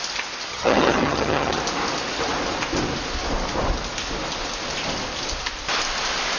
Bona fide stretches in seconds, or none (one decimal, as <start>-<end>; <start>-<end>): 0.0-0.5; 1.6-6.4